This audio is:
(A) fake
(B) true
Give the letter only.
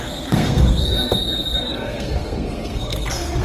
A